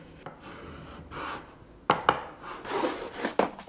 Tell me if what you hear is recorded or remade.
recorded